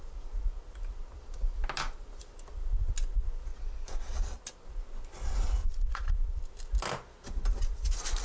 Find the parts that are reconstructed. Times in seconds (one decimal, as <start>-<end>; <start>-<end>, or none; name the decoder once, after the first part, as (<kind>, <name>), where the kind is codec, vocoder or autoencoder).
3.5-4.4 (vocoder, Vocos); 5.6-6.4